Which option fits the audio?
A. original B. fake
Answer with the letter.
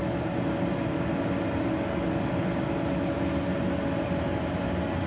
A